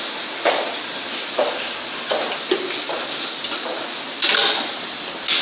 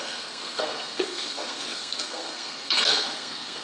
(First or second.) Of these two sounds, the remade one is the second